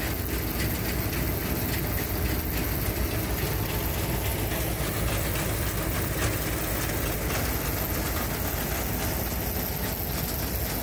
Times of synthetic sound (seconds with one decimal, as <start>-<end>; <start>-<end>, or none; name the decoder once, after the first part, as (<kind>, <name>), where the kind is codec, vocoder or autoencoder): none

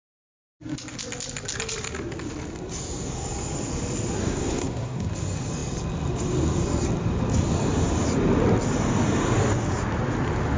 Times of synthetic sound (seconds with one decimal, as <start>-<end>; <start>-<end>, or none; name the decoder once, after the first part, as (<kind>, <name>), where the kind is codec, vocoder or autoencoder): 4.2-5.1 (codec, SNAC)

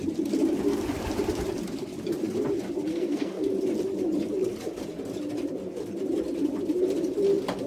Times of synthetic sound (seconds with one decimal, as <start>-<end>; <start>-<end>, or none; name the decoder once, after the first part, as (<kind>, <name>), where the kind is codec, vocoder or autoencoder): 2.9-3.5 (codec, SNAC)

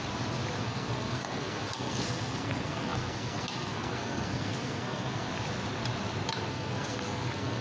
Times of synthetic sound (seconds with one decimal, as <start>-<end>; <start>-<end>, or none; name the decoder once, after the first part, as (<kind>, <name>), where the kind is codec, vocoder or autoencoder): 0.6-5.3 (codec, SNAC); 6.5-7.6